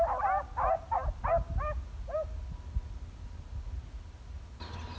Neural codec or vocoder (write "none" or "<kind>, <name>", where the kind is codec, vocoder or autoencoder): none